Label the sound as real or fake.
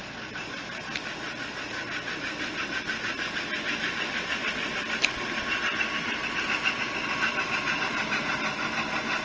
real